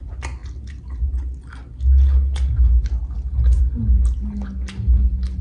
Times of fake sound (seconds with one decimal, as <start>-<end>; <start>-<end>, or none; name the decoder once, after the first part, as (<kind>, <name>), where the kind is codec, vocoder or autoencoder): none

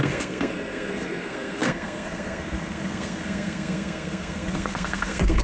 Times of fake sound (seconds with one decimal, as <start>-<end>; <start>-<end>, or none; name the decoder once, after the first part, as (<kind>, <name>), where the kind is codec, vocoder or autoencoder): 0.0-5.4 (codec, SNAC)

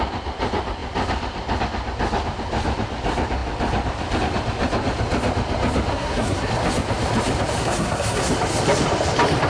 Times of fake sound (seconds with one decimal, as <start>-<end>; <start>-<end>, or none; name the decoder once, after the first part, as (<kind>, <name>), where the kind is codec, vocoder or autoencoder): 5.9-6.5 (codec, SNAC); 7.6-8.3